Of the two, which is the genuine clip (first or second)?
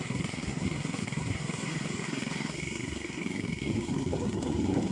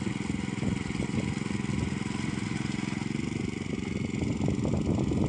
second